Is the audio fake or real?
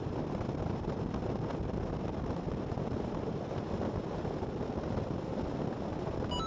real